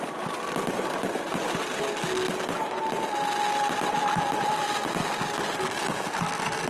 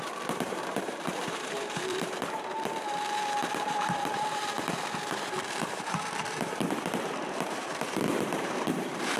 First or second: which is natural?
first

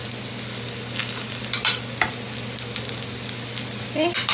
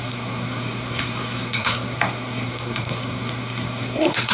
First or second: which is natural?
first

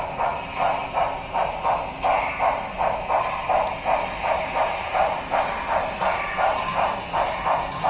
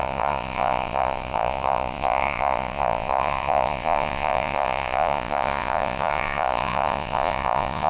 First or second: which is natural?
first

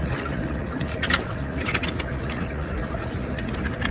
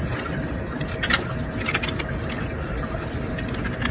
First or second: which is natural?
second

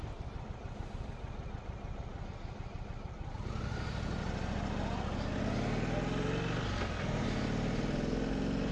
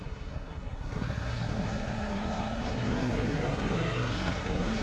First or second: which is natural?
first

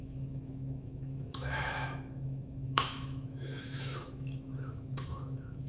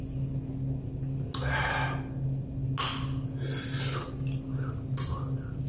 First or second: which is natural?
second